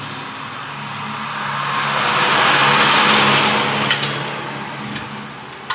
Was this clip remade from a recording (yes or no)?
no